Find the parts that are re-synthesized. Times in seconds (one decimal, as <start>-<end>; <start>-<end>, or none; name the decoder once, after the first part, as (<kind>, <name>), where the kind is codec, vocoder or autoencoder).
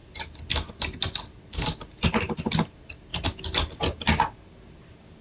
none